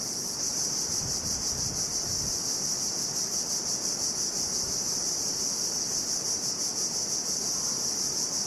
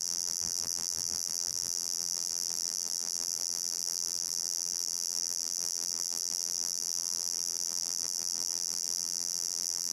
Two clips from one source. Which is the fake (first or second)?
second